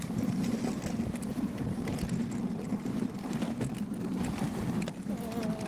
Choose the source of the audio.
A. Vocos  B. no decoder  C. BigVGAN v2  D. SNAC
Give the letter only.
B